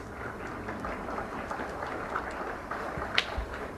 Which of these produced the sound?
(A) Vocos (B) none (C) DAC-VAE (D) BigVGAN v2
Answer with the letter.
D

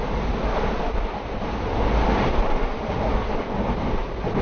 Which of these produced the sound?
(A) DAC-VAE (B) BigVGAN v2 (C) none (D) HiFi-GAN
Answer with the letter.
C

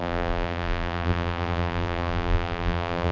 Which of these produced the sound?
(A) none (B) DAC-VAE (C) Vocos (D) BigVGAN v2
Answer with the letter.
D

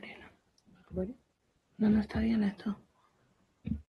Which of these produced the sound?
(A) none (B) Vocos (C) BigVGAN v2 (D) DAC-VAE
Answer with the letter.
A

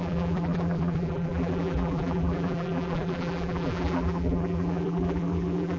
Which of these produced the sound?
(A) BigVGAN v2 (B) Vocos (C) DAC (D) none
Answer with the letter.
A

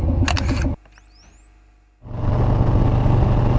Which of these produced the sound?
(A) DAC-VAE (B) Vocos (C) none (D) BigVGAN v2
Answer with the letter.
C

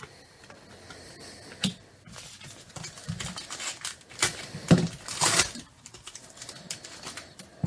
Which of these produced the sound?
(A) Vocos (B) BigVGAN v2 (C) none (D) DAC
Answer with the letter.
B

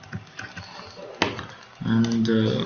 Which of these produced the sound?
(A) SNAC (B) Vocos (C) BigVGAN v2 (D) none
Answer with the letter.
D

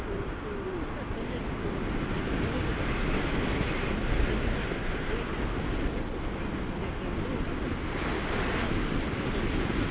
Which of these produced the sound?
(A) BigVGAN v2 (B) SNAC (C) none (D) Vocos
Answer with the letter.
C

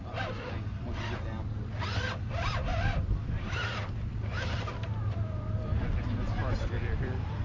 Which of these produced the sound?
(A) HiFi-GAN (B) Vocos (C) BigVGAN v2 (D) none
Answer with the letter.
C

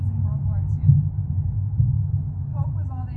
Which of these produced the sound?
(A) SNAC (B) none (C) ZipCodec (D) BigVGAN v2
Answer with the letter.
B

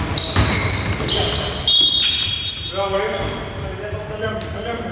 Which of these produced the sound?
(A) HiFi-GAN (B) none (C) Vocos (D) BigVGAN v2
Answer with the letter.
B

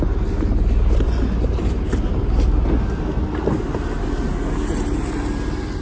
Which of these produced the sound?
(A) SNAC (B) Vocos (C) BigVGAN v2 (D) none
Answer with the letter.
D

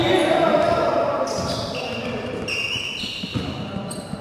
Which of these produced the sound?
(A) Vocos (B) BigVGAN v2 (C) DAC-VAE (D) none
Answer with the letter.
D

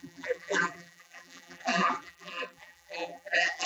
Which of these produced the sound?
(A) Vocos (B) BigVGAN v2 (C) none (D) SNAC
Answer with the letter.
B